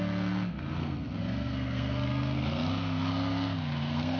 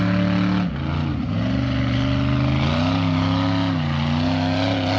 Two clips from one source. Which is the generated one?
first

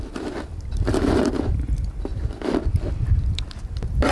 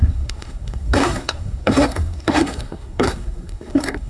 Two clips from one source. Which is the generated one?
second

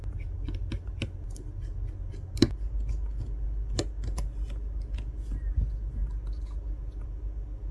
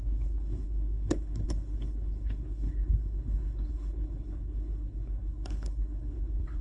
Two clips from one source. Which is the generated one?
second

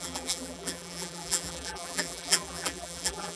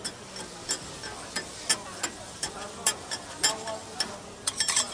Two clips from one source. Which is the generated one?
first